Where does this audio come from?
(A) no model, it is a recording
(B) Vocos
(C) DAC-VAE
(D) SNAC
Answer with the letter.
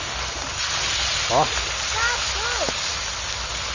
A